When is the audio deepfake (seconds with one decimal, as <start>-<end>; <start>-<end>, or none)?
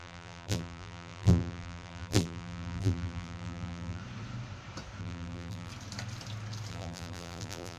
0.0-4.0; 5.0-5.7; 6.7-7.8